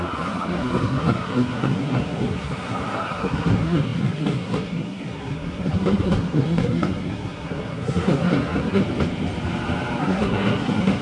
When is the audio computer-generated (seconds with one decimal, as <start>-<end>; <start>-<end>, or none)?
0.0-8.8; 10.0-11.0